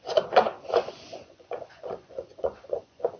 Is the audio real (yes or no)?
no